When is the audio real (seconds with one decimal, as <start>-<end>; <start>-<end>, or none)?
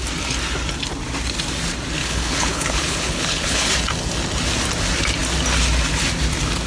0.0-2.0; 3.7-6.7